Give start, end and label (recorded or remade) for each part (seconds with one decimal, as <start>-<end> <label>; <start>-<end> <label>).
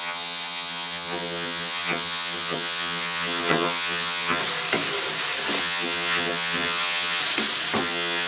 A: 0.0-4.4 remade; 4.4-5.6 recorded; 5.6-7.2 remade; 7.2-7.8 recorded; 7.8-8.3 remade